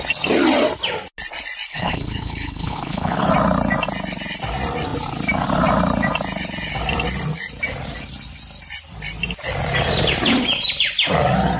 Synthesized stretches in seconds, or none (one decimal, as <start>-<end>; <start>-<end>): 1.7-3.3